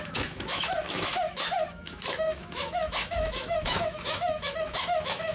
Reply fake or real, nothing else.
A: fake